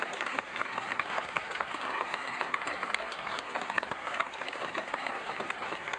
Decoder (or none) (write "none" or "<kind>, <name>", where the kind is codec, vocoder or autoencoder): codec, SNAC